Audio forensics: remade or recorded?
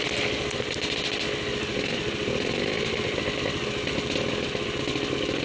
recorded